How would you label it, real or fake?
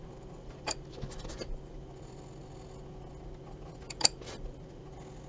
real